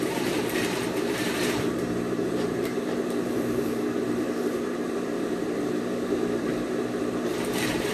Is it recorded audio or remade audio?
remade